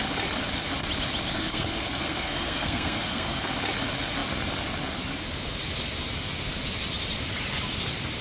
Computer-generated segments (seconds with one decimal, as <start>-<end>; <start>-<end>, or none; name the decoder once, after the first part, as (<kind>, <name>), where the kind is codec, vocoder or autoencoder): 1.3-3.5 (codec, SNAC)